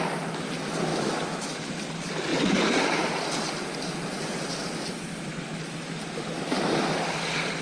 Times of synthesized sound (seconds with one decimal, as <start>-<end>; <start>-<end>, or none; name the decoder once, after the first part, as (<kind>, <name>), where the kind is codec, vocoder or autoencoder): 0.9-1.8 (autoencoder, DAC-VAE)